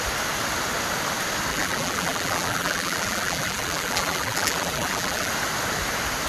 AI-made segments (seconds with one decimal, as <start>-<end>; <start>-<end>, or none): 1.5-5.3